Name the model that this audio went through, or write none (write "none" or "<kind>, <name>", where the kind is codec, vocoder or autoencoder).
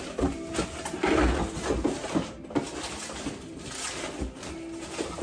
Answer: none